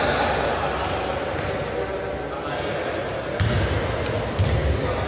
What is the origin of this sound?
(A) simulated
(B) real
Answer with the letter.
B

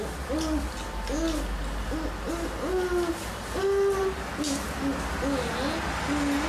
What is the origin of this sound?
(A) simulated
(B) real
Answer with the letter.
B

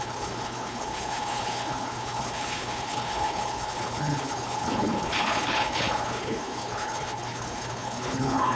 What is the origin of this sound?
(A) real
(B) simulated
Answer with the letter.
B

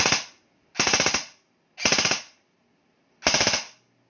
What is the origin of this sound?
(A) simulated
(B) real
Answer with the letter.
B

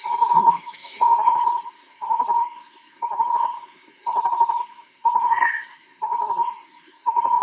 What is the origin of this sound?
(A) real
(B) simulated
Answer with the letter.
B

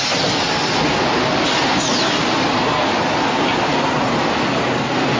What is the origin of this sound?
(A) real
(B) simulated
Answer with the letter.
A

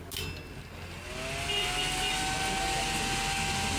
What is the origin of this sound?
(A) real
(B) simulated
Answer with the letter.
A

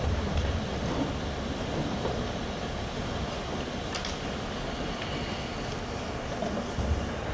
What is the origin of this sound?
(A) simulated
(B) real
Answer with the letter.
B